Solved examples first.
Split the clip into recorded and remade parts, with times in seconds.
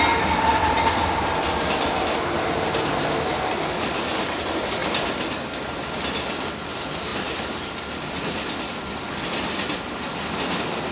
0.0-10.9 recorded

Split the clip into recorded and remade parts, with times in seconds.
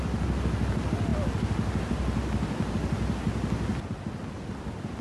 0.0-5.0 recorded